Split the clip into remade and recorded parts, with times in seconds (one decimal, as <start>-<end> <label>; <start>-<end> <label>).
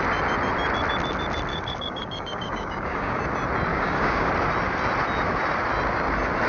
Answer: 0.0-1.5 recorded; 1.5-3.2 remade; 3.2-3.7 recorded; 3.7-4.3 remade; 4.3-6.5 recorded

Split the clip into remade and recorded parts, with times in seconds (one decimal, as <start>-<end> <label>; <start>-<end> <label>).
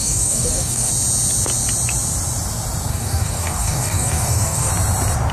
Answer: 0.0-0.9 remade; 0.9-2.9 recorded; 2.9-4.7 remade; 4.7-5.3 recorded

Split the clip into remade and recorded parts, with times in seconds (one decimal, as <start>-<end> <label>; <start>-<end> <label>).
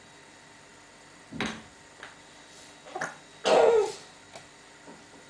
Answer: 0.0-5.3 recorded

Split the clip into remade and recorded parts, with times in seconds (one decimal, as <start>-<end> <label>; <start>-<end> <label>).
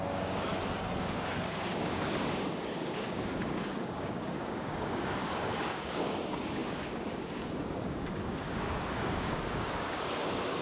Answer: 0.0-0.5 remade; 0.5-1.0 recorded; 1.0-10.6 remade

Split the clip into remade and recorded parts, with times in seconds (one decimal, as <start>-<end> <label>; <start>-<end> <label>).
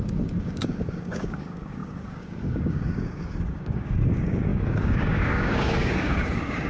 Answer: 0.0-6.7 remade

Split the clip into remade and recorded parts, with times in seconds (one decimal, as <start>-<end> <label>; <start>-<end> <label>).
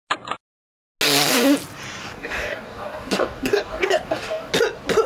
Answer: 0.0-2.0 recorded; 2.0-4.5 remade; 4.5-5.1 recorded